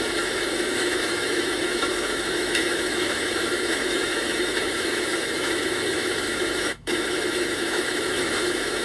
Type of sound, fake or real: fake